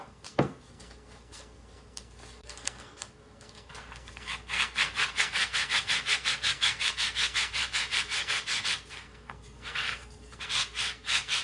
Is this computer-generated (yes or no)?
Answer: yes